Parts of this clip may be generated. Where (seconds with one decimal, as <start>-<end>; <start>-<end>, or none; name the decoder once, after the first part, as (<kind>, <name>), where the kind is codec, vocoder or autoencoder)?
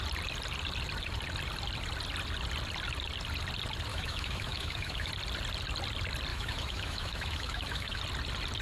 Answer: 3.9-5.1 (autoencoder, DAC-VAE); 6.3-8.0